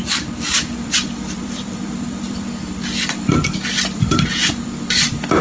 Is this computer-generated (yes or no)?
yes